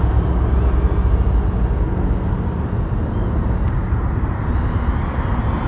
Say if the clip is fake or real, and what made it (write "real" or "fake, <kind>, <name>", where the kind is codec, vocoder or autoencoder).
real